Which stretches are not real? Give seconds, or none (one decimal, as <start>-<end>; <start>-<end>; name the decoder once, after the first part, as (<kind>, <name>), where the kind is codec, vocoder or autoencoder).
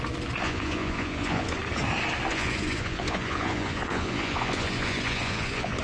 0.4-1.6 (vocoder, Vocos); 2.3-5.8